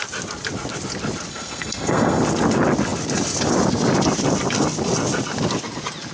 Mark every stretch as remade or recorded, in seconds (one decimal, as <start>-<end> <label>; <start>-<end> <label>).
0.0-1.3 recorded; 1.3-2.2 remade; 2.2-6.1 recorded

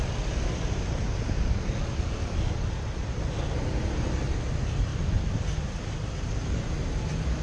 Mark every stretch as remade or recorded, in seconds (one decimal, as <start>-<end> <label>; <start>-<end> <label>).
0.0-7.4 recorded

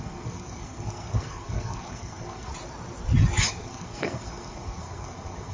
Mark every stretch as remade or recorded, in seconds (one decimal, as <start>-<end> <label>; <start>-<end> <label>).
0.0-2.5 remade; 2.5-3.5 recorded; 3.5-5.5 remade

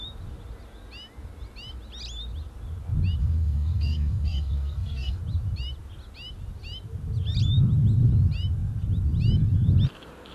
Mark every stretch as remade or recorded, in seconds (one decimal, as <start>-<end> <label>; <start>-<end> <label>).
0.0-3.2 recorded; 3.2-5.2 remade; 5.2-10.3 recorded

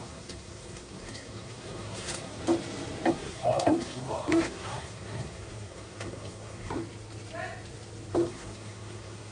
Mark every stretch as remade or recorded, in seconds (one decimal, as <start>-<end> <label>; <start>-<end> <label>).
0.0-2.4 remade; 2.4-3.1 recorded; 3.1-6.8 remade; 6.8-8.1 recorded; 8.1-9.3 remade